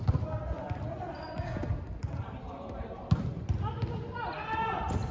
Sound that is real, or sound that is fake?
real